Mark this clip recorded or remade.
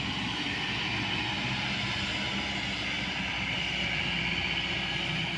recorded